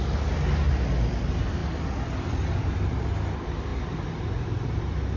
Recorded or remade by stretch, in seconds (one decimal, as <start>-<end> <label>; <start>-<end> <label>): 0.0-3.7 recorded; 3.7-5.2 remade